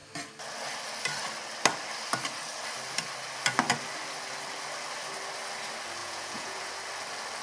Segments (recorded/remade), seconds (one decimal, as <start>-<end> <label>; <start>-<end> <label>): 0.0-6.0 recorded; 6.0-6.7 remade; 6.7-7.4 recorded